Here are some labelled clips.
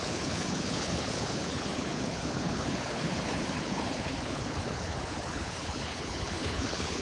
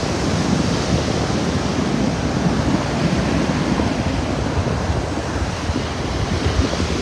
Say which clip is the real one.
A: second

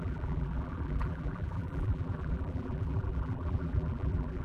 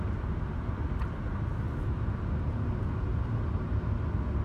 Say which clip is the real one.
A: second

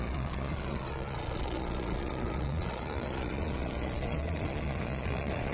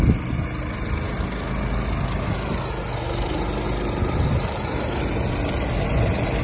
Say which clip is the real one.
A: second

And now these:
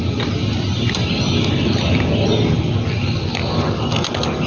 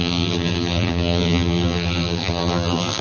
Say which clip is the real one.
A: first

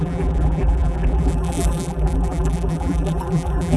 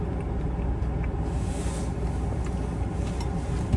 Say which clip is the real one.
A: second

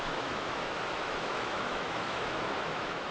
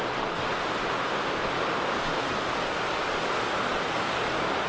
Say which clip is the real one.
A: second